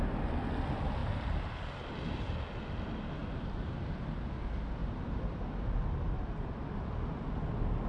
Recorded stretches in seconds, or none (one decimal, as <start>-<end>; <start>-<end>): 0.0-3.2; 4.0-4.8; 6.8-7.9